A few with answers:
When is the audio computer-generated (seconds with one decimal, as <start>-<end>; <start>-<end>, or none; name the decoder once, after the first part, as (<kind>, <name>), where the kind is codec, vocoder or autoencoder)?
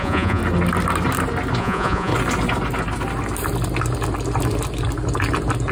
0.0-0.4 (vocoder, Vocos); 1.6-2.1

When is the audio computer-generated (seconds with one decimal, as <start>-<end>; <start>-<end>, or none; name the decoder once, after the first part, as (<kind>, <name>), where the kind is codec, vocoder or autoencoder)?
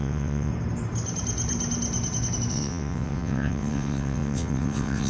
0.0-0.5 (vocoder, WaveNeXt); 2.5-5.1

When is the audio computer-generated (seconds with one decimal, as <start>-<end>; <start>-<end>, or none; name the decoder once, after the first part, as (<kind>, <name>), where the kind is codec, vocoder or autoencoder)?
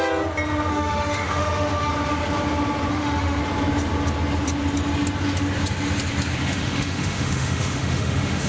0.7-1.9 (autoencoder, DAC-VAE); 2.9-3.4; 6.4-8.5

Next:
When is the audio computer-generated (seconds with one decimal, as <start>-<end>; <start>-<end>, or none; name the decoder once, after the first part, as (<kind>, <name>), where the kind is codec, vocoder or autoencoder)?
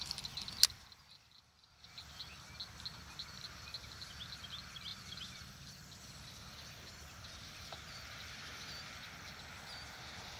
4.9-7.4 (vocoder, BigVGAN v2)